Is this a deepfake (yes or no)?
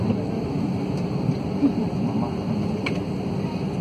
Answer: no